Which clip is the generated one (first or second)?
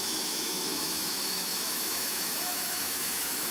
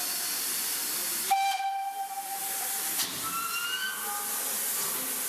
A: first